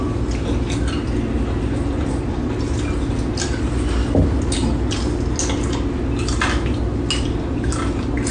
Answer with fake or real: real